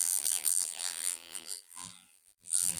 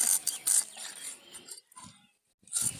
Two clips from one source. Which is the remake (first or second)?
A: first